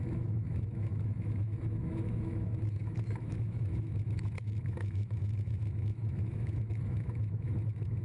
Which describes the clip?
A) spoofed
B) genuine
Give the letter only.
A